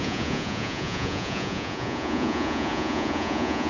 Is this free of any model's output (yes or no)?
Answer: no